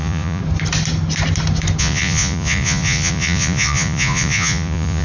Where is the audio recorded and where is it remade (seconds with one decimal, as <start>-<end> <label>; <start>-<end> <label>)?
0.0-0.4 remade; 0.4-1.8 recorded; 1.8-5.0 remade